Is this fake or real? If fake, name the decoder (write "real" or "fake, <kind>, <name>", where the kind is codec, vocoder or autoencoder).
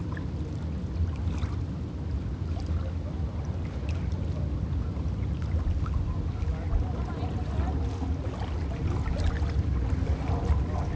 real